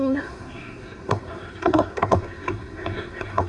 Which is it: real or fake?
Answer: fake